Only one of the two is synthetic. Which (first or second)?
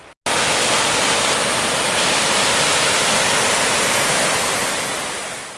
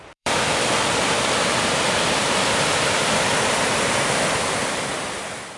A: second